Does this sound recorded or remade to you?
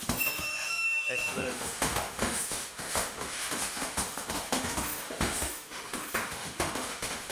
remade